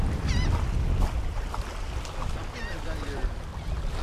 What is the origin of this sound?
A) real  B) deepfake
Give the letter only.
A